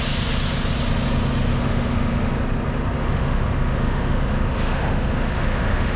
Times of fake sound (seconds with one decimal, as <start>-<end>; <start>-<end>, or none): 1.5-2.3; 3.0-6.0